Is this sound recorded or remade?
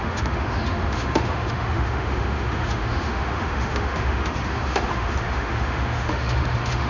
remade